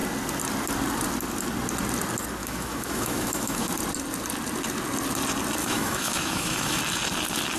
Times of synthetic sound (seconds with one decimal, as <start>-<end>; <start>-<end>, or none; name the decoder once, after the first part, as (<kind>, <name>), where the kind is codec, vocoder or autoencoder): 2.4-3.7 (autoencoder, DAC-VAE); 5.6-6.8